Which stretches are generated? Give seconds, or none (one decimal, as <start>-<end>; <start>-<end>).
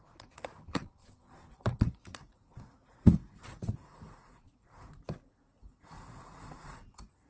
0.0-0.5; 1.5-7.3